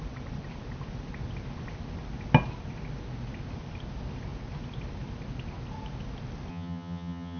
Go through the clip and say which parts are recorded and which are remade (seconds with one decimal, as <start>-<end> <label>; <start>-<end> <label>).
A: 0.0-6.5 recorded; 6.5-7.4 remade